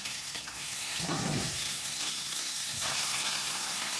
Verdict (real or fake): fake